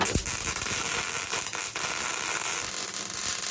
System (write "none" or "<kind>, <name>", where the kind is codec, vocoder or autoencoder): none